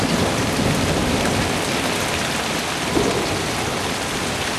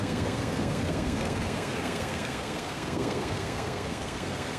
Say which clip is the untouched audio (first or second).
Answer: first